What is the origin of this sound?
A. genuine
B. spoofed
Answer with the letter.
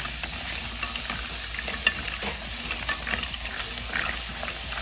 A